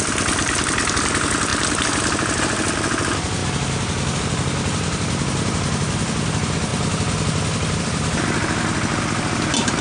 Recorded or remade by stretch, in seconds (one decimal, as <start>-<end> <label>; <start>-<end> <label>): 0.0-9.8 recorded

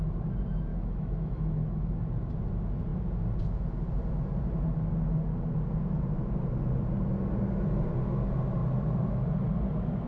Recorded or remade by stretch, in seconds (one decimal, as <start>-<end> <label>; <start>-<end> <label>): 0.0-0.7 recorded; 0.7-1.9 remade; 1.9-10.1 recorded

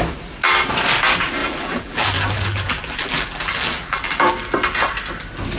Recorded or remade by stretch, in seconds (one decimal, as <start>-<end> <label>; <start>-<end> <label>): 0.0-1.4 recorded; 1.4-4.3 remade; 4.3-5.6 recorded

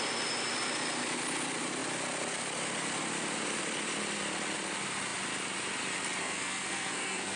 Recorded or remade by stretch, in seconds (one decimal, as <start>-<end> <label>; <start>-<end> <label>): 0.0-6.2 recorded; 6.2-7.4 remade

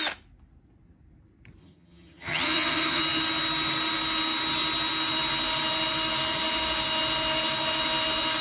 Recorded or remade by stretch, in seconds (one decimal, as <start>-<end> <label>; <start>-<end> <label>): 0.0-1.6 recorded; 1.6-3.0 remade; 3.0-8.4 recorded

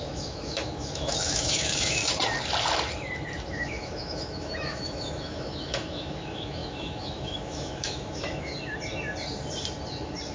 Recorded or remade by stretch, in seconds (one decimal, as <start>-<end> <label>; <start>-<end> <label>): 0.0-2.0 remade; 2.0-3.5 recorded; 3.5-8.5 remade; 8.5-10.3 recorded

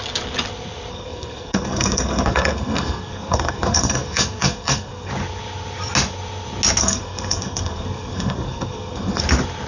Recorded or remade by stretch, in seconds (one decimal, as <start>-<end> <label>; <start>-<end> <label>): 0.0-0.9 recorded; 0.9-5.1 remade; 5.1-6.8 recorded; 6.8-9.2 remade; 9.2-9.7 recorded